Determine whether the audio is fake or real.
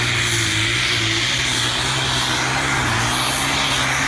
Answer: real